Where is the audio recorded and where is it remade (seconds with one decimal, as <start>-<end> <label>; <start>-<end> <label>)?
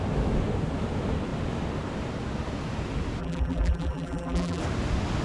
0.0-3.2 recorded; 3.2-4.6 remade; 4.6-5.2 recorded